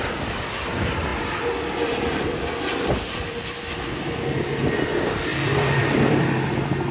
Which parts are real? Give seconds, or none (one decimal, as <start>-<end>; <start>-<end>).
0.0-1.1; 3.8-5.3; 6.5-6.9

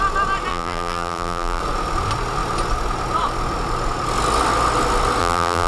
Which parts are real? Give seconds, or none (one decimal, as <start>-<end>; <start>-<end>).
0.0-0.5; 1.6-5.2

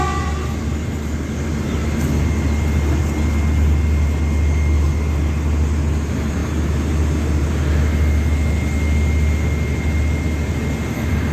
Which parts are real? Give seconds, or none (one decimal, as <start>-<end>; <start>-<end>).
0.0-11.3

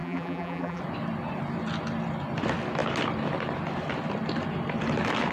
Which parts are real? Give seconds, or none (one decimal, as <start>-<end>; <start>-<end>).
0.8-5.3